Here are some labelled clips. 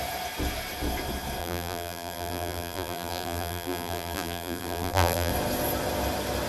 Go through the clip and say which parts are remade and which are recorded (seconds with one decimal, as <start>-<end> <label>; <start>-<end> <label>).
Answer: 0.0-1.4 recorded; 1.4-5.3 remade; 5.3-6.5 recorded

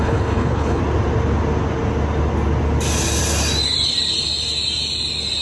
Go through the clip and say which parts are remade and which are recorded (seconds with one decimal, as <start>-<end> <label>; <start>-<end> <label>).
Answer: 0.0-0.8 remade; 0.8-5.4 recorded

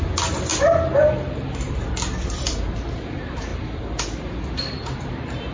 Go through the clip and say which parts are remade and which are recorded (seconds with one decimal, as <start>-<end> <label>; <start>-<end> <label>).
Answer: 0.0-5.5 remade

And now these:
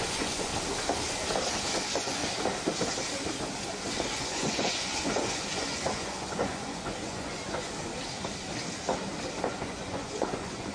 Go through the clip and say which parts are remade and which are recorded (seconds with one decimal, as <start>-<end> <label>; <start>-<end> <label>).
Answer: 0.0-0.5 remade; 0.5-1.6 recorded; 1.6-2.2 remade; 2.2-4.1 recorded; 4.1-7.9 remade; 7.9-9.4 recorded; 9.4-10.7 remade

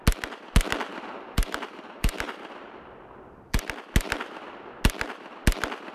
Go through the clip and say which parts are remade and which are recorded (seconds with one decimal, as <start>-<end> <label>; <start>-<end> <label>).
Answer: 0.0-0.9 recorded; 0.9-3.6 remade; 3.6-5.9 recorded

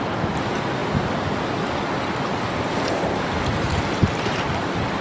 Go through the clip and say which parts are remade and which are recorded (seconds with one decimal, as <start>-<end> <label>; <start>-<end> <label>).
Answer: 0.0-5.0 recorded

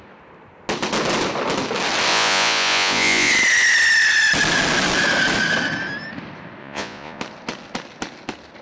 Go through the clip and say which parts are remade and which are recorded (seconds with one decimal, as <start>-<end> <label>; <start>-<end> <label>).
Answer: 0.0-2.1 recorded; 2.1-3.3 remade; 3.3-6.6 recorded; 6.6-7.2 remade; 7.2-8.6 recorded

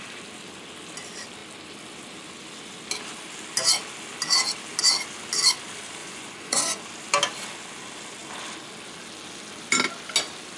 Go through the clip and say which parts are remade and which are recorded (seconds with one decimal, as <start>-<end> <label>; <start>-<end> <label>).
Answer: 0.0-6.0 recorded; 6.0-6.8 remade; 6.8-10.6 recorded